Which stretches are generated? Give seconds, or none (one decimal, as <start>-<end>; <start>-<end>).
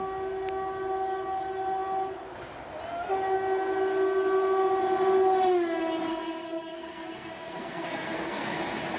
6.1-8.6